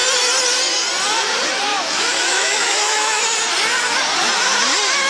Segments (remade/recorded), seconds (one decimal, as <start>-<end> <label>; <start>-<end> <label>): 0.0-1.7 recorded; 1.7-3.2 remade; 3.2-5.1 recorded